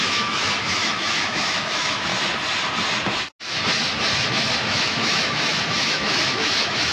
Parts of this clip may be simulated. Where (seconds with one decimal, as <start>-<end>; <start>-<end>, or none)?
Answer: 0.0-2.1; 4.3-6.9